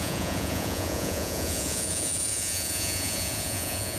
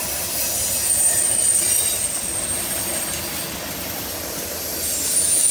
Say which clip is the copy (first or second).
first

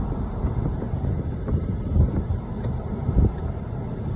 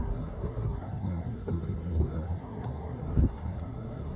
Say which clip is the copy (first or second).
second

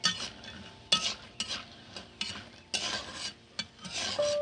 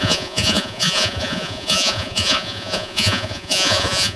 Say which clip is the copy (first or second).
second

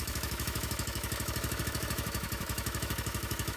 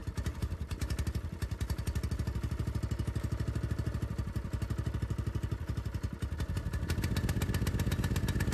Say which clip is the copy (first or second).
first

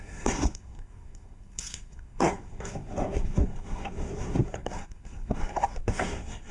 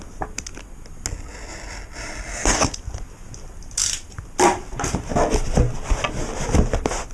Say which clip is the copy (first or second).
first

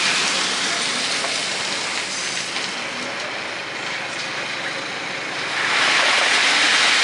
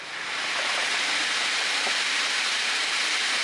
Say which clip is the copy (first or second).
second